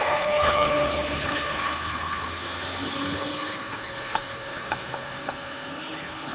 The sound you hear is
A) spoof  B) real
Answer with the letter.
A